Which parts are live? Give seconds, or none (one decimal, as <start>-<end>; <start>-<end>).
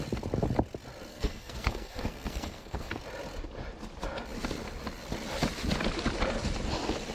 0.0-1.1; 3.0-7.1